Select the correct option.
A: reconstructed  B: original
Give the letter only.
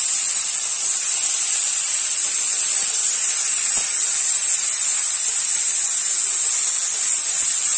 B